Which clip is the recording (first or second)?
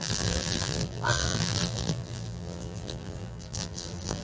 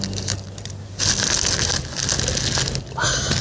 second